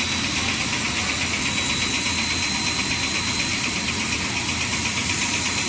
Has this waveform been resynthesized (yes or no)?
no